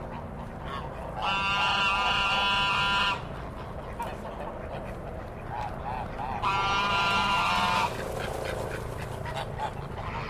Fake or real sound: real